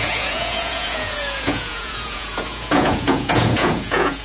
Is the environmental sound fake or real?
fake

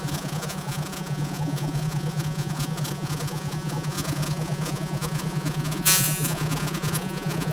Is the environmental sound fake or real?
fake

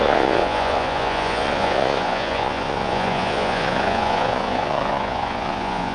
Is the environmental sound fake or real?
fake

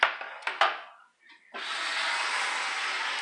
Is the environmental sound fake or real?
real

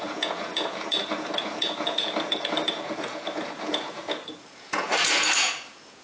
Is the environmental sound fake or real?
fake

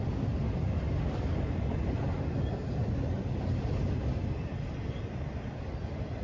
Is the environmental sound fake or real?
real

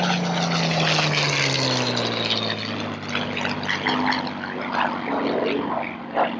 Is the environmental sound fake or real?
real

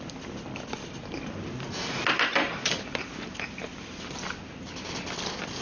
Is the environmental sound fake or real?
real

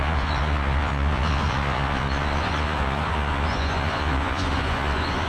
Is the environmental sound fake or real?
fake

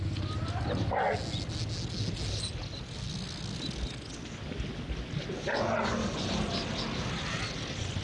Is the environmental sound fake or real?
real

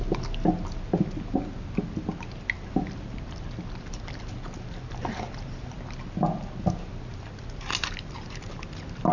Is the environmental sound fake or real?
real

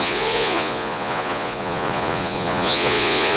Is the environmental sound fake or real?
fake